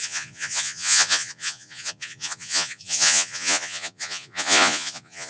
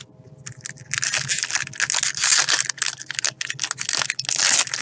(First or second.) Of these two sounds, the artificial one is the first